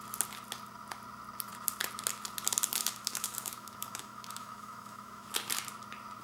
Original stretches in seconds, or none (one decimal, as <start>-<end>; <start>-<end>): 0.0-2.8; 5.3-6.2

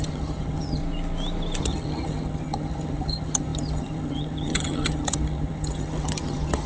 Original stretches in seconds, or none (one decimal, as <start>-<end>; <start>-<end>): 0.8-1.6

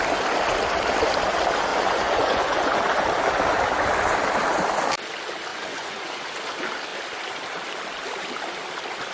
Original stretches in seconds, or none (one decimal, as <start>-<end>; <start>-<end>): 0.0-1.7; 2.8-5.5; 6.2-9.1